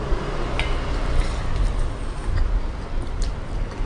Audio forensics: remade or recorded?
recorded